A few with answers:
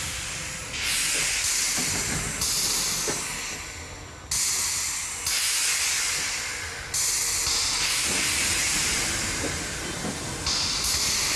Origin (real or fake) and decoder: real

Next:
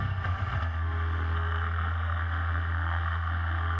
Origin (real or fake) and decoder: fake, codec, SNAC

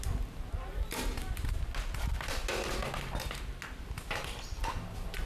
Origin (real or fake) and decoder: real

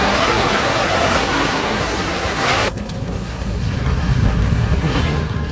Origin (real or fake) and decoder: fake, codec, SNAC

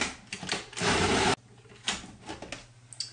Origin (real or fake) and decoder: real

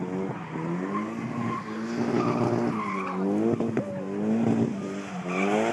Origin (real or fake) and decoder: real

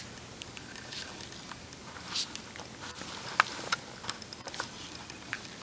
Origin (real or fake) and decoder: real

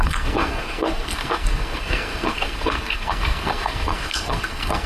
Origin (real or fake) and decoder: fake, codec, SNAC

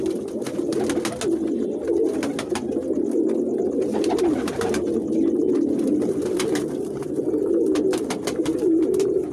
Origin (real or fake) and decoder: real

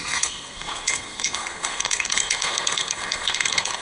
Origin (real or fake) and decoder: fake, codec, SNAC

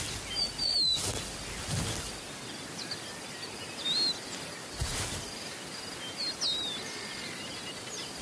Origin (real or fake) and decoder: real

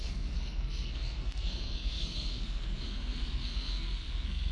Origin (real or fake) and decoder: fake, codec, SNAC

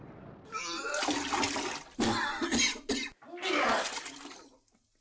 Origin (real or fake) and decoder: real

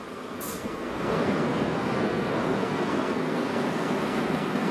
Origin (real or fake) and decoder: fake, codec, SNAC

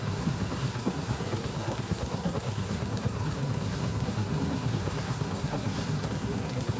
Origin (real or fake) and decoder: fake, codec, SNAC